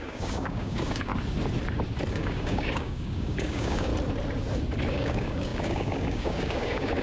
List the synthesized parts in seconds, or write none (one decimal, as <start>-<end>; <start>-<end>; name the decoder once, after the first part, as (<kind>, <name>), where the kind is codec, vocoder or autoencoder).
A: 0.0-1.1 (codec, DAC); 2.1-3.9; 4.9-7.0